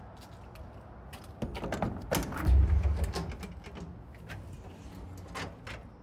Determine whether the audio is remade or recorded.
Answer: recorded